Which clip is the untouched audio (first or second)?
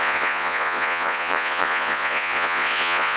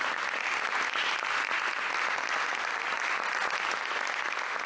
second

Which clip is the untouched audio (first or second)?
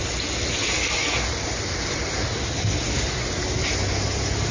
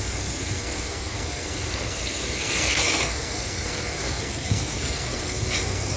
first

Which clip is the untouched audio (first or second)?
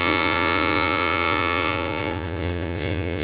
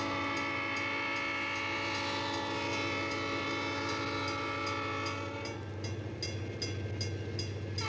second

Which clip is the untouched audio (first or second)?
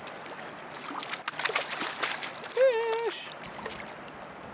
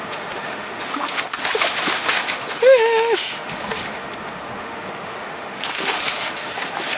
first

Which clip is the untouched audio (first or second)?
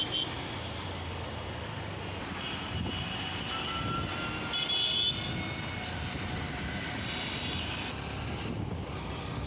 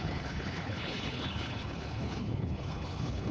first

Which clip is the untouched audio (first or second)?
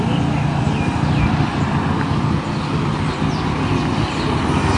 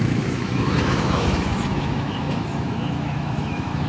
first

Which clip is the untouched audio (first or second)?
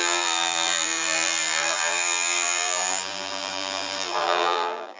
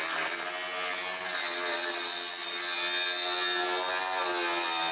second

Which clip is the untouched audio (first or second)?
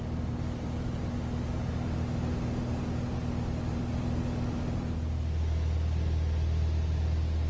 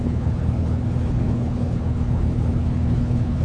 first